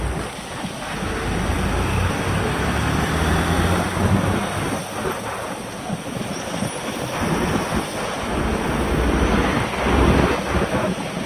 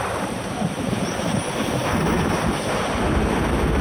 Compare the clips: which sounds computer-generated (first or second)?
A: second